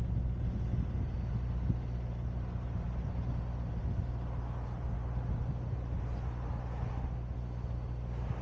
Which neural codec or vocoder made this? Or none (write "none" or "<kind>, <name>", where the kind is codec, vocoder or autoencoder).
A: none